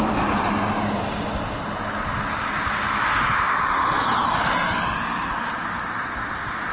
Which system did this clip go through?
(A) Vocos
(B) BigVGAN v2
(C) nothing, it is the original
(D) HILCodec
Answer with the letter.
C